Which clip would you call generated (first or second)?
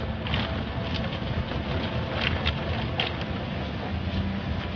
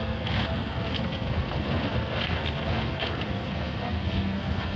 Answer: second